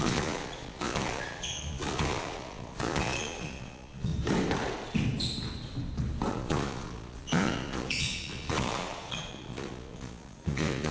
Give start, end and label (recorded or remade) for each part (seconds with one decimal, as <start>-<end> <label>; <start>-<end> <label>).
0.0-4.1 remade; 4.1-6.3 recorded; 6.3-10.9 remade